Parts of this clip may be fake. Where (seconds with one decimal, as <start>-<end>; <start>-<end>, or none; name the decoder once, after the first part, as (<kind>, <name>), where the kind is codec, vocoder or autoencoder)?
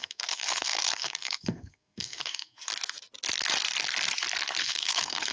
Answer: 0.0-2.7 (codec, SNAC); 4.6-5.3